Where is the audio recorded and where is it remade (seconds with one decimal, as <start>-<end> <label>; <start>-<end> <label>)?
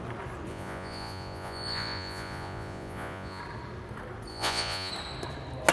0.0-0.5 recorded; 0.5-3.4 remade; 3.4-4.3 recorded; 4.3-4.9 remade; 4.9-5.7 recorded